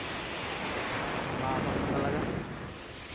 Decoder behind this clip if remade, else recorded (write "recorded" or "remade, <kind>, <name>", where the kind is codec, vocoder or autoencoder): recorded